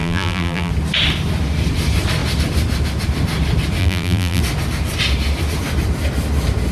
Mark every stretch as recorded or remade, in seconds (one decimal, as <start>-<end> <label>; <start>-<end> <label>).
0.0-0.7 remade; 0.7-3.8 recorded; 3.8-4.4 remade; 4.4-6.7 recorded